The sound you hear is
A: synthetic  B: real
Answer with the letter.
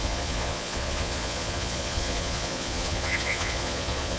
A